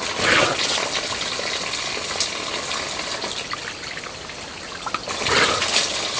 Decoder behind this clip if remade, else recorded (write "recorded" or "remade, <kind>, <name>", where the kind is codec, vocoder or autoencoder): recorded